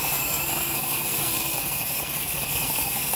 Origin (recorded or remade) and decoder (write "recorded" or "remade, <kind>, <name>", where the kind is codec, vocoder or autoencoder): remade, codec, SNAC